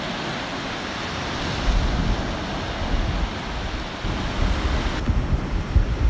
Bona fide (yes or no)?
yes